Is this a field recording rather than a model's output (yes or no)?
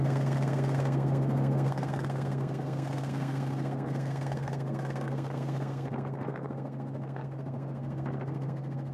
no